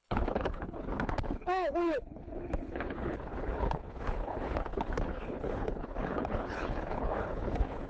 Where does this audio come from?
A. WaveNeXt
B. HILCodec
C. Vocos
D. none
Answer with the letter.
B